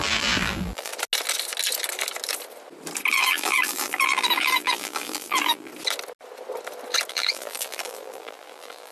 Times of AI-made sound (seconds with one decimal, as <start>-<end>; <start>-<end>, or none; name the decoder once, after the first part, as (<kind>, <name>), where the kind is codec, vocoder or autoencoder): 0.0-0.9 (vocoder, BigVGAN v2); 3.1-5.7; 7.1-8.9